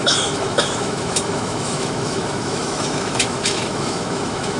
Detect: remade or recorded remade